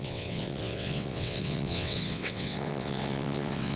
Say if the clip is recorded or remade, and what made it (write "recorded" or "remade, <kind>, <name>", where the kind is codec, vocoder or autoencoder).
remade, vocoder, WaveNeXt